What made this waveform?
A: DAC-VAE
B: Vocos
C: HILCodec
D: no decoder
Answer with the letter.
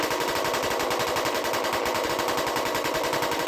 D